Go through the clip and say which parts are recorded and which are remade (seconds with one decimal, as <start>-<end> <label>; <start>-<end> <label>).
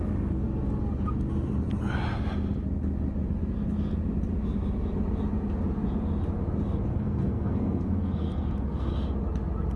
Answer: 0.0-6.9 recorded; 6.9-8.9 remade; 8.9-9.8 recorded